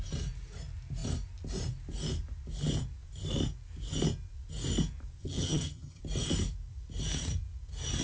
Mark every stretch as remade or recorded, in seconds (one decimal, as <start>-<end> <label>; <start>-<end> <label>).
0.0-5.2 recorded; 5.2-6.0 remade; 6.0-8.0 recorded